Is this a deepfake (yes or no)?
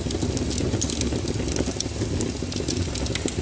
no